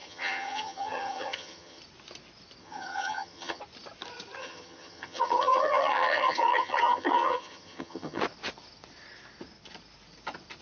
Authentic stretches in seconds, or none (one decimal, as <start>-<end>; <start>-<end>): 1.8-2.6; 3.6-4.4; 8.2-10.6